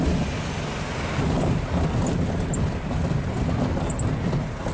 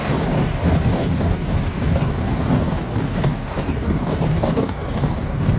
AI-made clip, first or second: second